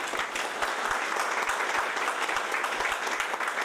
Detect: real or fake real